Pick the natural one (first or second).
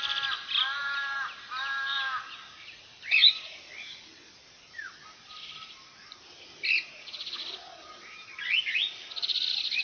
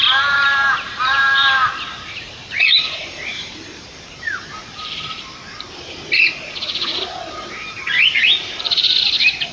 first